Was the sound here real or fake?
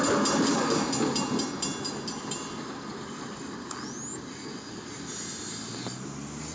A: real